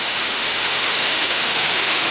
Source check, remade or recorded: remade